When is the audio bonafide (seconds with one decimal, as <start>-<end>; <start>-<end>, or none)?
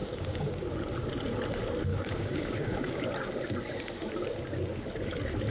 0.6-1.9; 3.1-5.5